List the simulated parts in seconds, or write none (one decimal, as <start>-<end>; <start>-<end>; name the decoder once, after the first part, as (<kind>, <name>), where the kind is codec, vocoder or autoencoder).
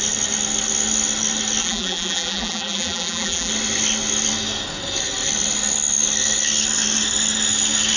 1.6-3.5 (vocoder, BigVGAN v2)